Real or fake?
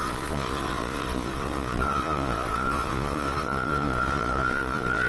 fake